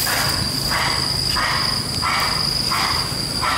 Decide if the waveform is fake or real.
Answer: real